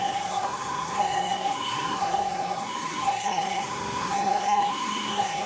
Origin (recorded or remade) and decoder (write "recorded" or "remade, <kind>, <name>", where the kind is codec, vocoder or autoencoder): remade, codec, SNAC